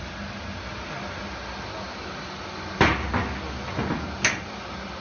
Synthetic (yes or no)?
no